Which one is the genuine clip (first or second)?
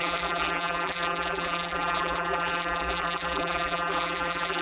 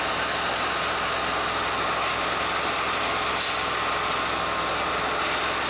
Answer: second